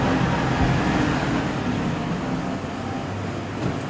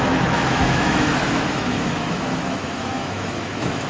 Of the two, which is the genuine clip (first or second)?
first